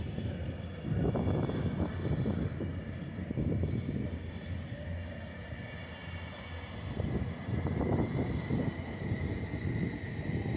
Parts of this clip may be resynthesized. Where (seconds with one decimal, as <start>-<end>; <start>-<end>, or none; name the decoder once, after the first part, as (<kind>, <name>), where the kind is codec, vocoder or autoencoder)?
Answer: none